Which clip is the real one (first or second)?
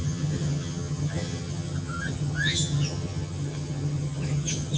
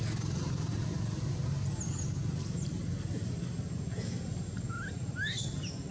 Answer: second